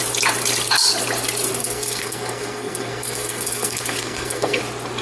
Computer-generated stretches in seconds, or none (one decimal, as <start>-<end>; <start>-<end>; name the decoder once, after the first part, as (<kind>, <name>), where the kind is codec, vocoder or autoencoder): 1.6-4.6 (codec, SNAC)